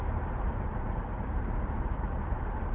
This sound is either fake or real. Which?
fake